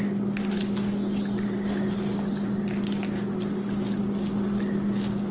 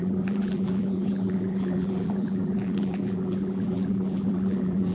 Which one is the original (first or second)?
first